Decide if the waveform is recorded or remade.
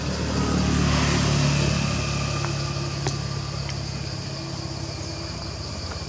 recorded